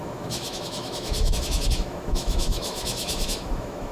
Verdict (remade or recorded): remade